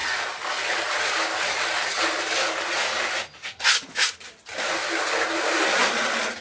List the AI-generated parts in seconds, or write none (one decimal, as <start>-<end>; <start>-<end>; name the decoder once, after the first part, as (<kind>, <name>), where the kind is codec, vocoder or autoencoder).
none